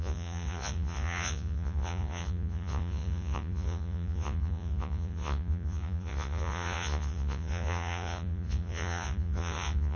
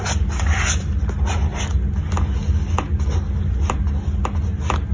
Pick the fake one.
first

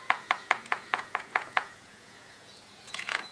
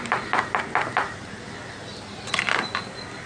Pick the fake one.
first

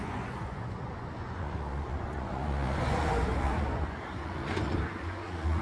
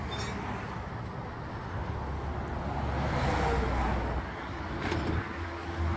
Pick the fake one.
first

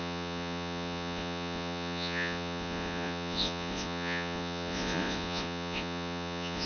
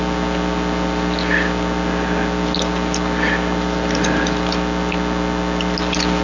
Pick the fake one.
first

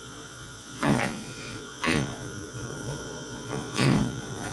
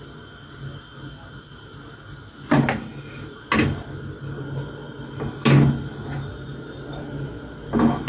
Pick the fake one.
first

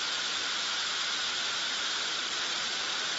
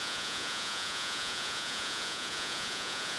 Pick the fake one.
second